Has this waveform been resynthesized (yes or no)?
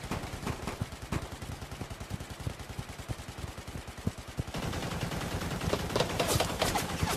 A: no